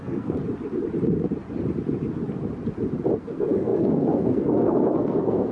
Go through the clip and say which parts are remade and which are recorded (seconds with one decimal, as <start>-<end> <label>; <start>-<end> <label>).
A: 0.0-0.4 remade; 0.4-3.2 recorded; 3.2-5.5 remade

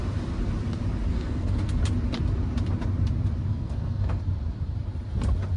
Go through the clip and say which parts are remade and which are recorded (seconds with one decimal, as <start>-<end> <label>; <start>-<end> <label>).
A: 0.0-1.1 recorded; 1.1-1.8 remade; 1.8-3.5 recorded; 3.5-4.2 remade; 4.2-5.6 recorded

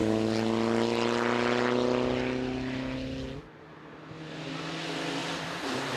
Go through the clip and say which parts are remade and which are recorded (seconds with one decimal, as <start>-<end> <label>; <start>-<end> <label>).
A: 0.0-5.2 recorded; 5.2-6.0 remade

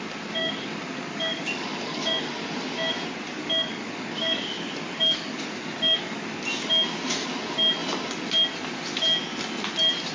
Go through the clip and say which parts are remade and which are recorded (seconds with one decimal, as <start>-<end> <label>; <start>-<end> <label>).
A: 0.0-0.4 recorded; 0.4-2.3 remade; 2.3-3.4 recorded; 3.4-6.4 remade; 6.4-10.1 recorded

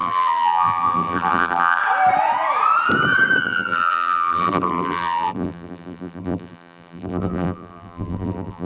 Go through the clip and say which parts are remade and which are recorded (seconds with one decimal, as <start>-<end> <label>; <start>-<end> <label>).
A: 0.0-1.8 remade; 1.8-3.4 recorded; 3.4-8.6 remade